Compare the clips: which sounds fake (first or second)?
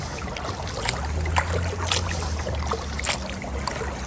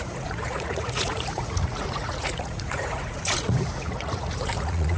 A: second